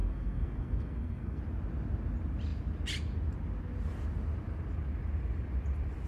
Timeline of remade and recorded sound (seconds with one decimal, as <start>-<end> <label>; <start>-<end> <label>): 0.0-1.4 remade; 1.4-6.1 recorded